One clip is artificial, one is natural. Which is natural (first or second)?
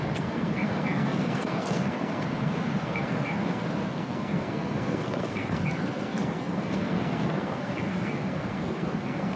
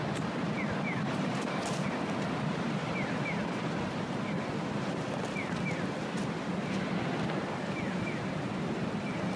second